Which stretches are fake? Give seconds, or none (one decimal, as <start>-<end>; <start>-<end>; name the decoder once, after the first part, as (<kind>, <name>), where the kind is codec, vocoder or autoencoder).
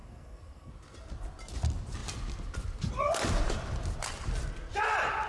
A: 0.0-0.7 (codec, SNAC)